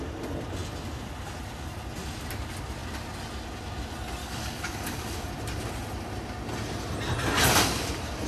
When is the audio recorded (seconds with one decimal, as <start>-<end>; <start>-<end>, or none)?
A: 0.0-4.2; 5.3-8.3